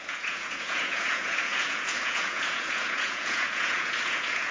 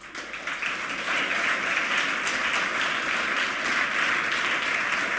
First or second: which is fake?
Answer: first